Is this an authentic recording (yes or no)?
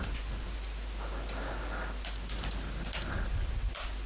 yes